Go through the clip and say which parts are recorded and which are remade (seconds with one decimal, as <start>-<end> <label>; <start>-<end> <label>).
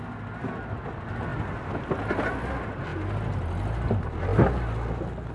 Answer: 0.0-5.3 recorded